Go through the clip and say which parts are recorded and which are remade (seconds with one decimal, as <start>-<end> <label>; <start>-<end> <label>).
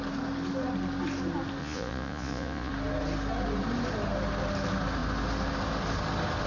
0.0-1.6 recorded; 1.6-2.7 remade; 2.7-6.5 recorded